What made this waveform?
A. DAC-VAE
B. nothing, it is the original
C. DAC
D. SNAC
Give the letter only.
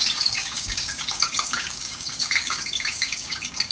C